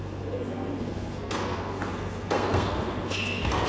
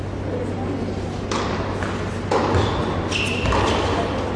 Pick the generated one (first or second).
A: first